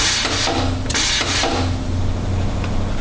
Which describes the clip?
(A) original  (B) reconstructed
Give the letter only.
A